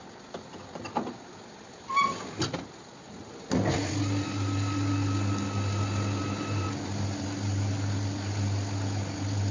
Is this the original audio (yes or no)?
yes